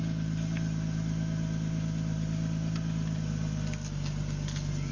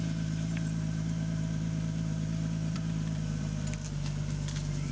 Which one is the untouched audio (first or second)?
first